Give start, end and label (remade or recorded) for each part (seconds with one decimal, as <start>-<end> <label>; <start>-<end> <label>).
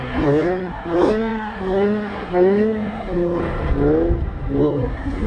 0.0-3.4 remade; 3.4-4.6 recorded; 4.6-5.3 remade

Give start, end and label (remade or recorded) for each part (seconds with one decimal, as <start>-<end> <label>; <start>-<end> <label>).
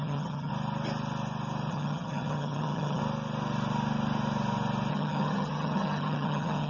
0.0-0.5 remade; 0.5-1.7 recorded; 1.7-3.0 remade; 3.0-4.9 recorded; 4.9-6.7 remade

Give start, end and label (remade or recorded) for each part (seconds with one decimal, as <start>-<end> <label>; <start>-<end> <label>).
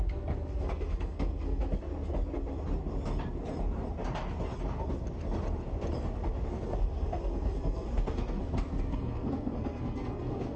0.0-1.9 remade; 1.9-6.5 recorded; 6.5-10.6 remade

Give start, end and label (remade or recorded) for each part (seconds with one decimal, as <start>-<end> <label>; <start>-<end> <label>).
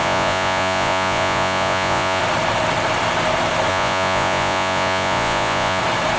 0.0-2.2 remade; 2.2-3.7 recorded; 3.7-5.8 remade; 5.8-6.2 recorded